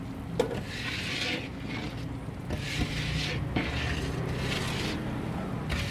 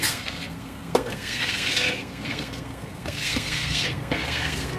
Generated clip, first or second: second